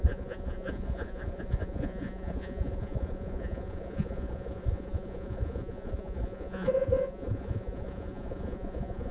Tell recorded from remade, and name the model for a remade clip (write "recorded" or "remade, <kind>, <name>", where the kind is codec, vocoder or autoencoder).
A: remade, vocoder, Vocos